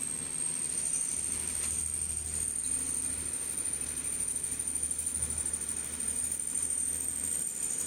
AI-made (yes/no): no